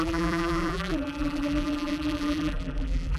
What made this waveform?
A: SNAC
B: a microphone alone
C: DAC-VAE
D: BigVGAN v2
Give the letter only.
D